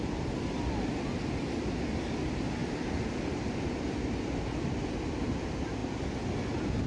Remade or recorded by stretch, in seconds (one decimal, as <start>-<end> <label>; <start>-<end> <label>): 0.0-2.6 recorded; 2.6-4.2 remade; 4.2-6.9 recorded